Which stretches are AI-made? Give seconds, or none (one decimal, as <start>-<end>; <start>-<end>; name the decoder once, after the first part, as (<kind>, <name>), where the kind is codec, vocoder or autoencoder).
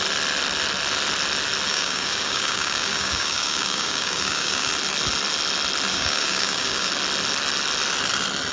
1.7-4.7 (codec, DAC); 5.9-6.9